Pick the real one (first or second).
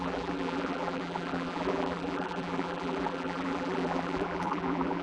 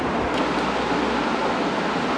second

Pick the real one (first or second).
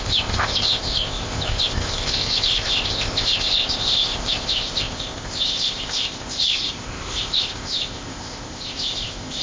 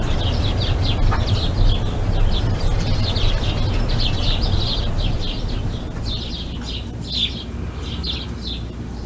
second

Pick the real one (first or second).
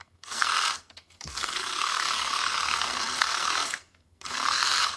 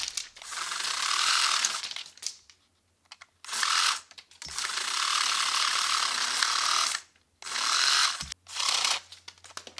second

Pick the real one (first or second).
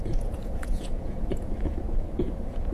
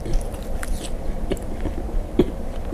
second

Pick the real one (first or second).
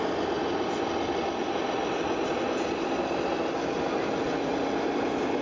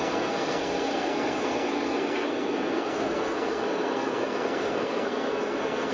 first